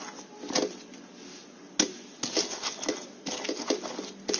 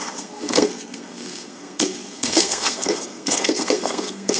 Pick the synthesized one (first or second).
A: second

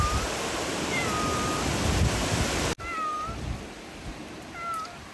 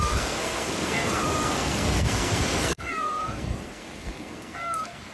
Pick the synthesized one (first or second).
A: second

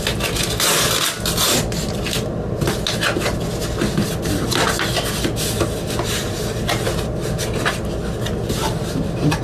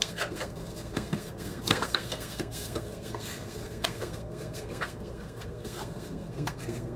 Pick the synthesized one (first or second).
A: second